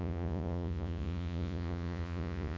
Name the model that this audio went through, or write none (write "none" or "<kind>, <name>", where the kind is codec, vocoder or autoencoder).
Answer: vocoder, Vocos